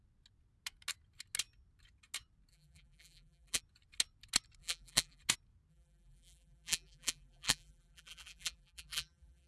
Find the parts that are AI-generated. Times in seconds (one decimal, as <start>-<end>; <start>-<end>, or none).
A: 2.5-3.6; 4.6-5.2; 5.7-9.5